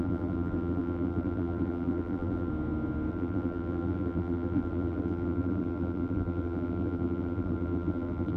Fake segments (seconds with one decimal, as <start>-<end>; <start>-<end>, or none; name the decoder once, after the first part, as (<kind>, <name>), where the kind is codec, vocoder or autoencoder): 0.0-2.5 (vocoder, BigVGAN v2); 3.1-8.4